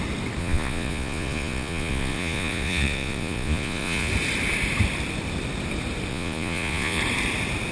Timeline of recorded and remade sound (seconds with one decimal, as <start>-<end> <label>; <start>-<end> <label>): 0.0-0.4 recorded; 0.4-4.1 remade; 4.1-6.1 recorded; 6.1-7.0 remade; 7.0-7.7 recorded